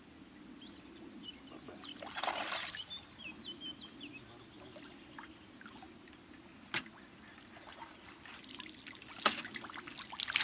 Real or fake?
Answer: real